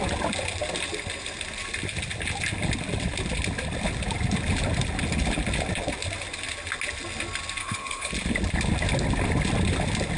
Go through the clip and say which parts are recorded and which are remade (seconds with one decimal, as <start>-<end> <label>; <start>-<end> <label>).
0.0-7.6 recorded; 7.6-8.1 remade; 8.1-10.2 recorded